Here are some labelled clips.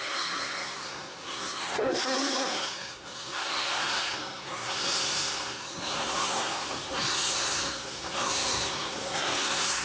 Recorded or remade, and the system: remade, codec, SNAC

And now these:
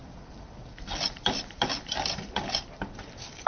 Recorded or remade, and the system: remade, vocoder, BigVGAN v2